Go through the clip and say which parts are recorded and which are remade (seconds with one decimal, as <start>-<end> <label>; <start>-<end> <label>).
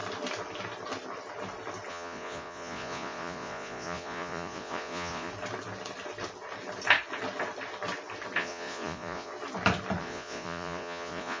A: 0.0-1.9 recorded; 1.9-5.3 remade; 5.3-8.4 recorded; 8.4-9.3 remade; 9.3-10.0 recorded; 10.0-11.4 remade